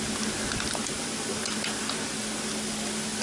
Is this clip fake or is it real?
real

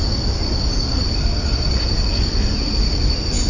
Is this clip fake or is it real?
real